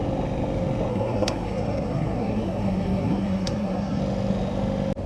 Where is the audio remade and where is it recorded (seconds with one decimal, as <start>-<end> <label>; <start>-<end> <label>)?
0.0-0.9 recorded; 0.9-4.0 remade; 4.0-5.1 recorded